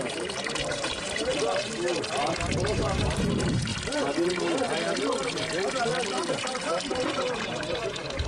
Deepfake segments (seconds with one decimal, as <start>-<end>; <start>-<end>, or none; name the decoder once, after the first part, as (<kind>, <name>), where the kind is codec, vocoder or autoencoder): 0.0-1.3 (vocoder, BigVGAN v2); 2.2-3.7; 6.3-8.3